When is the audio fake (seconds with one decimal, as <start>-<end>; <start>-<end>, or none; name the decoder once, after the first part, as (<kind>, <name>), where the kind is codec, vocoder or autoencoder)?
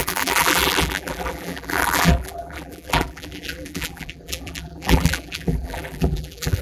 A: 0.0-6.6 (vocoder, BigVGAN v2)